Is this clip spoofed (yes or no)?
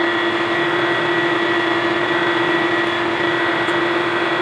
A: no